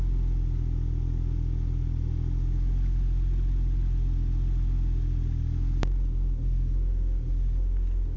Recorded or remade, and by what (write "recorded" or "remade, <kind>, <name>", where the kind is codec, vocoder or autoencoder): recorded